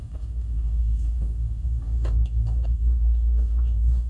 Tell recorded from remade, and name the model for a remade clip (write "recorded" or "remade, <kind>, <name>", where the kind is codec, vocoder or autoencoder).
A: remade, codec, DAC